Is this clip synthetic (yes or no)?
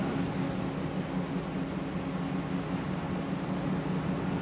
no